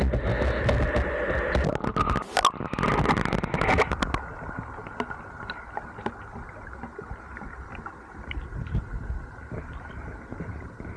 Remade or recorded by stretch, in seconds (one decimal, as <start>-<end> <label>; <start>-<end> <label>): 0.0-7.3 recorded; 7.3-8.9 remade; 8.9-10.3 recorded; 10.3-11.0 remade